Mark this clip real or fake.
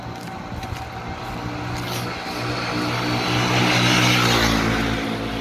real